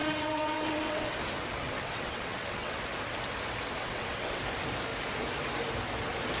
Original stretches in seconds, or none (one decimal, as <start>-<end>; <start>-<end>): 1.1-1.6; 2.8-3.8; 4.4-6.4